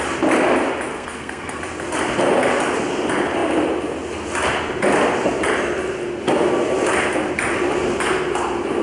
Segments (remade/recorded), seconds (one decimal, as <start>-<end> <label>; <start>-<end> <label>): 0.0-0.9 recorded; 0.9-1.6 remade; 1.6-8.8 recorded